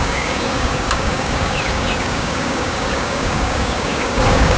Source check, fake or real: fake